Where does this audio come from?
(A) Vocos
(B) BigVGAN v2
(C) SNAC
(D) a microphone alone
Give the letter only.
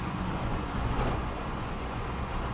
A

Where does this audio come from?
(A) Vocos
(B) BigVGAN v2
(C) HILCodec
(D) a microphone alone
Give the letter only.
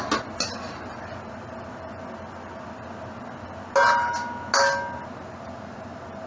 D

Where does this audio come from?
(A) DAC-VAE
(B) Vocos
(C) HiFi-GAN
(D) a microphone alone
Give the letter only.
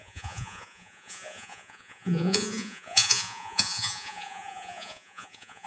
B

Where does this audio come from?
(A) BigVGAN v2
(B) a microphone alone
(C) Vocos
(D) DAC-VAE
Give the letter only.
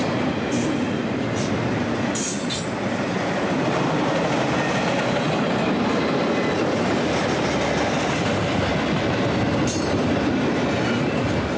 B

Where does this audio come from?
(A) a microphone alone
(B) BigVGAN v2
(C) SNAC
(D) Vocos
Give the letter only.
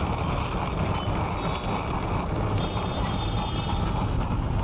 A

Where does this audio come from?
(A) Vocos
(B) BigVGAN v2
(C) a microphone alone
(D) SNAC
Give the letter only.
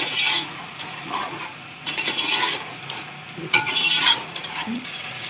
A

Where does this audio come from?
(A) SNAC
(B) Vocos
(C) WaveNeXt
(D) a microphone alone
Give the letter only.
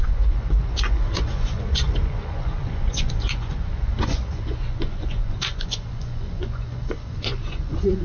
B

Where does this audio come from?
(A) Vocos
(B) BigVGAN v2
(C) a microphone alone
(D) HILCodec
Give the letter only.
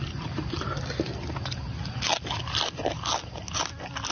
C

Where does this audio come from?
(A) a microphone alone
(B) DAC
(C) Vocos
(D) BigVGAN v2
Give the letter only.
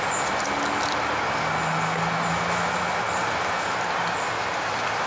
A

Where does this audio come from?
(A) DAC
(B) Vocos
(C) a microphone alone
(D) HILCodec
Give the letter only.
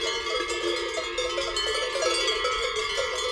C